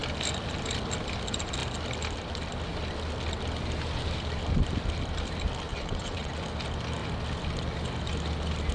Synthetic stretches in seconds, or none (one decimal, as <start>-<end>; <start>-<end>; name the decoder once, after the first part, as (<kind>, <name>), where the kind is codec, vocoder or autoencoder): 5.7-6.3 (vocoder, WaveNeXt)